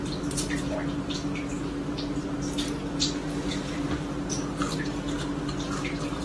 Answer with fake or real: real